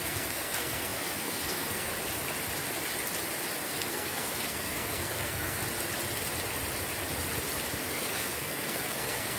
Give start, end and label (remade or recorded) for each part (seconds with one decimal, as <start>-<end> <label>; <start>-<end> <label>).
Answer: 0.0-1.9 remade; 1.9-3.6 recorded; 3.6-5.6 remade; 5.6-7.9 recorded; 7.9-9.4 remade